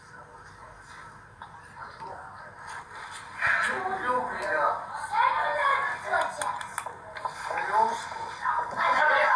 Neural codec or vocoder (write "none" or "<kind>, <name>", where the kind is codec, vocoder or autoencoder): none